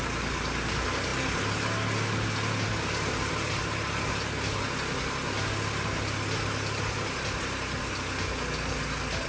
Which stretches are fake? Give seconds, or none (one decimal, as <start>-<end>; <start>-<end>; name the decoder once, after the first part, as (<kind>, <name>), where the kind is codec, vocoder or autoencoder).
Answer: none